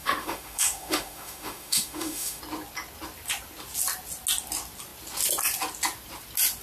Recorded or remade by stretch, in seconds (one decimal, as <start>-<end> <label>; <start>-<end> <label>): 0.0-2.4 remade; 2.4-6.6 recorded